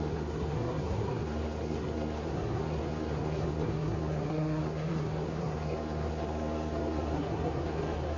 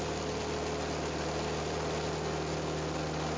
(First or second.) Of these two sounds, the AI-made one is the first